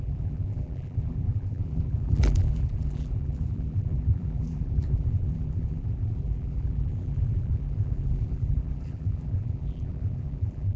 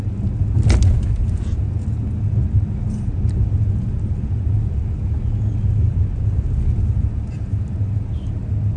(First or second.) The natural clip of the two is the second